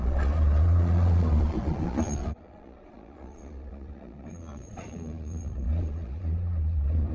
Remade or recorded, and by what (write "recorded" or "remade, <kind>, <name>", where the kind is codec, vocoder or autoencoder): remade, vocoder, Vocos